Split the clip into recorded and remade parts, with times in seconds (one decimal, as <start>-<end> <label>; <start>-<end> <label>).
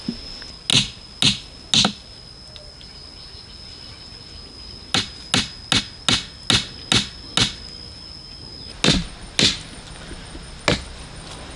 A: 0.0-11.6 recorded